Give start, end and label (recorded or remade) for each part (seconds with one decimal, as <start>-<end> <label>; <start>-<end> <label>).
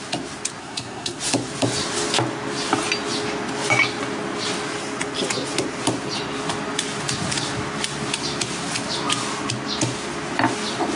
0.0-0.6 recorded; 0.6-1.2 remade; 1.2-11.0 recorded